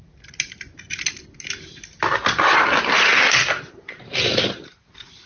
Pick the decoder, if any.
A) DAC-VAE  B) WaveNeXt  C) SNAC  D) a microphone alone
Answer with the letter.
D